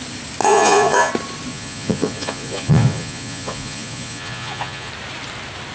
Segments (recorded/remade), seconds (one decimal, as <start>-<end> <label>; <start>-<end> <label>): 0.0-0.4 recorded; 0.4-1.1 remade; 1.1-1.5 recorded; 1.5-4.9 remade; 4.9-5.7 recorded